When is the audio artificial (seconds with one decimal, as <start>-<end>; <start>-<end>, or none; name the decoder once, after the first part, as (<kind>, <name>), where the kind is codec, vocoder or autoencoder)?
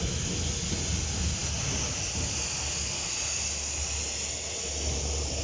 none